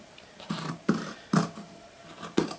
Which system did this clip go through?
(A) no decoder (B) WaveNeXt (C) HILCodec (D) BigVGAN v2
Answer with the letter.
D